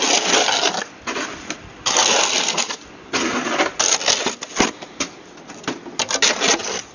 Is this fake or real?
real